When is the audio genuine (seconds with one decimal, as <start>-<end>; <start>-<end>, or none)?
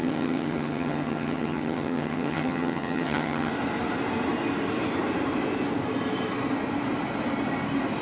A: 3.5-8.0